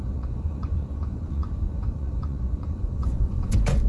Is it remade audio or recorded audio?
remade